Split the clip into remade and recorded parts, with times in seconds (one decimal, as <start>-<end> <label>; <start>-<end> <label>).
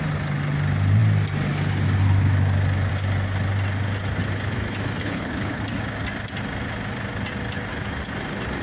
0.0-5.0 recorded; 5.0-5.6 remade; 5.6-8.6 recorded